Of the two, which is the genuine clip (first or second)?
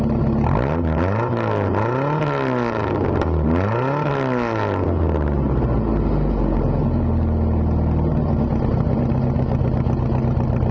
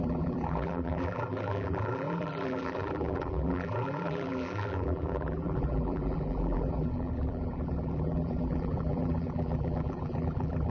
first